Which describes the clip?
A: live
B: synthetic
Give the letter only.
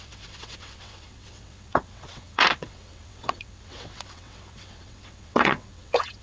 B